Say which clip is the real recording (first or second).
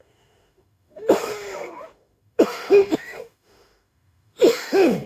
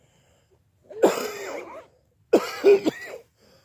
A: second